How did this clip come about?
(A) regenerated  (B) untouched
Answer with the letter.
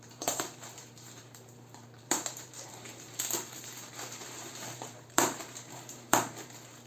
A